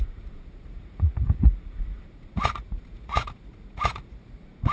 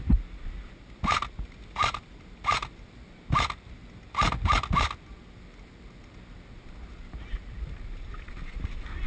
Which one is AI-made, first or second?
first